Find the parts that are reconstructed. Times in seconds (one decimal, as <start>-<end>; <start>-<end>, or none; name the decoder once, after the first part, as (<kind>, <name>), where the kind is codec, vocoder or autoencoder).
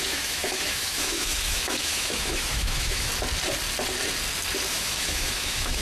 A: 0.0-3.1 (autoencoder, DAC-VAE); 4.7-5.8